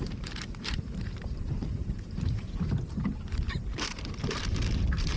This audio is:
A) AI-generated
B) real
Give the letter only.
A